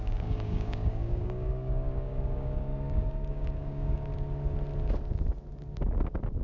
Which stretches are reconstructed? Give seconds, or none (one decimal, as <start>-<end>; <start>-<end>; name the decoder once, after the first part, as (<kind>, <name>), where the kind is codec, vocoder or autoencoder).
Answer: 0.0-4.1 (codec, DAC)